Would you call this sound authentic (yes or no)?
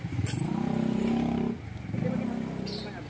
yes